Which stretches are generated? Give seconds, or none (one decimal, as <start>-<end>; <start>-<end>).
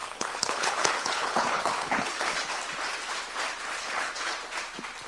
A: 0.0-2.4; 3.8-4.3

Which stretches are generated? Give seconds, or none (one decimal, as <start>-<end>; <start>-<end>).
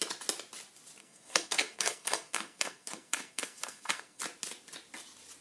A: 1.0-4.2